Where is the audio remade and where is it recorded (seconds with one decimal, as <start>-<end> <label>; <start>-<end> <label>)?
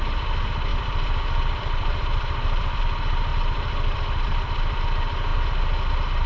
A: 0.0-0.7 recorded; 0.7-2.8 remade; 2.8-3.3 recorded; 3.3-4.8 remade; 4.8-6.3 recorded